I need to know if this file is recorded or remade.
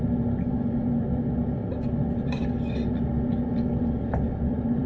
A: recorded